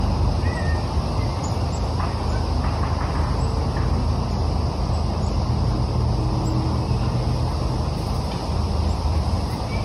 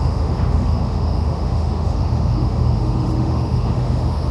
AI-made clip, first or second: second